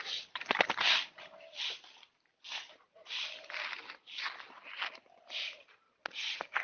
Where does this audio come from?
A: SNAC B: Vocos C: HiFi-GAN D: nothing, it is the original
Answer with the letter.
D